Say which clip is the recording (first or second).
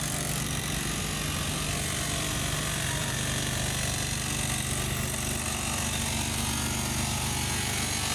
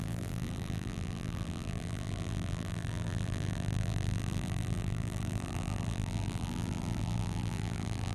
first